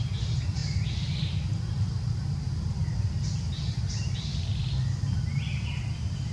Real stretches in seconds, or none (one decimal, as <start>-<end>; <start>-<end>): 0.0-6.3